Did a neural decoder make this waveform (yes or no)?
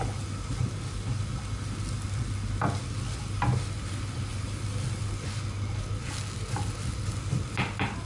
no